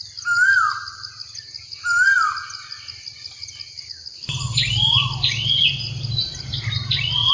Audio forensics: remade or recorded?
recorded